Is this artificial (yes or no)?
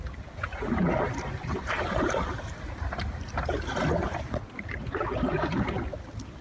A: no